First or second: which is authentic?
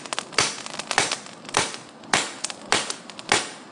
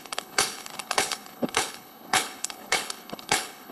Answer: first